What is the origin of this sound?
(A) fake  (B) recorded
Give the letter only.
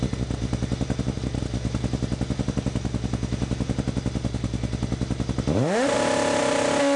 B